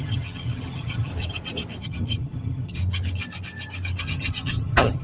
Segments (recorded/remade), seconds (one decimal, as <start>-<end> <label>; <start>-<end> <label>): 0.0-1.1 remade; 1.1-1.8 recorded; 1.8-2.8 remade; 2.8-4.0 recorded; 4.0-5.0 remade